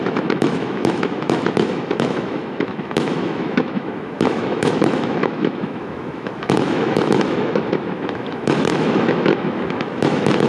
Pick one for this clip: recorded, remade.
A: remade